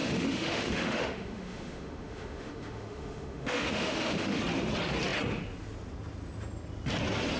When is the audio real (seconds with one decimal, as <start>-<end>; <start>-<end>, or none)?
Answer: 4.4-7.4